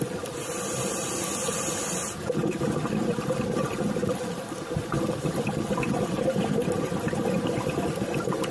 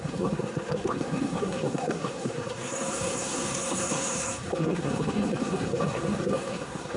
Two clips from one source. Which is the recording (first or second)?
first